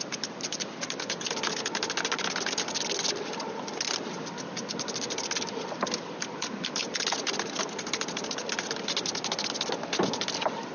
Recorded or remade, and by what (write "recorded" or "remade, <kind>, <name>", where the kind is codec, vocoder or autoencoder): recorded